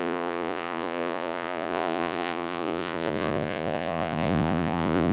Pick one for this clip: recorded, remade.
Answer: remade